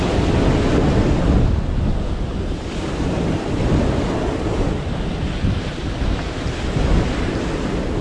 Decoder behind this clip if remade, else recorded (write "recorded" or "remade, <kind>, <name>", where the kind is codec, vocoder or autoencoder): recorded